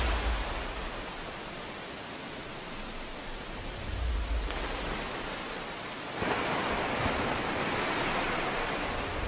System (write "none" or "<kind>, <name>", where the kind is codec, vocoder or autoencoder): none